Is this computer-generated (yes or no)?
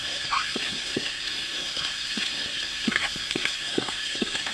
yes